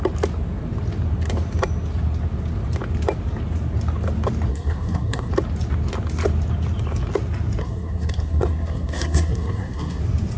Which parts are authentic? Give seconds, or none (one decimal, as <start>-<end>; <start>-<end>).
0.0-4.5; 5.3-7.6; 10.0-10.4